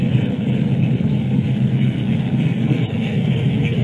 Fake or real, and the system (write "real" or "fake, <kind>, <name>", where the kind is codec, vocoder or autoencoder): fake, codec, SNAC